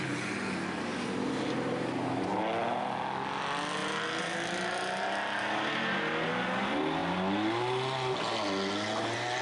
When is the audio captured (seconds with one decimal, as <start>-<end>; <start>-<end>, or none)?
0.0-9.4